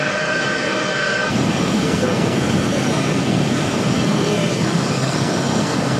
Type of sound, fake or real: fake